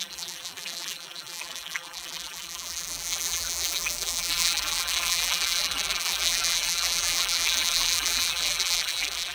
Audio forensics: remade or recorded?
remade